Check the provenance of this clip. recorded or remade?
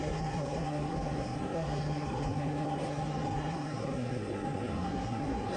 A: remade